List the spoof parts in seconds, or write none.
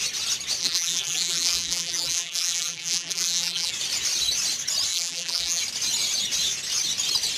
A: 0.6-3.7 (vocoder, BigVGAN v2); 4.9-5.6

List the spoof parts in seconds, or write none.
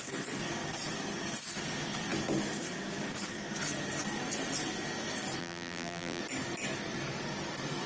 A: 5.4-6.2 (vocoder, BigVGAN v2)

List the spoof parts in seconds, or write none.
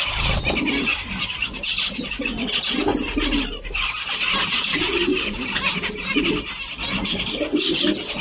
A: 0.9-2.1 (vocoder, BigVGAN v2); 5.1-6.2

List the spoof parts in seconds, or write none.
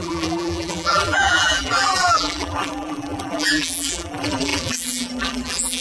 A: 0.0-5.8 (vocoder, BigVGAN v2)